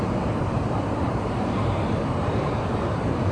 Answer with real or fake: fake